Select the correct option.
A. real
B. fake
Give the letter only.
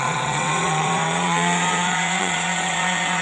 B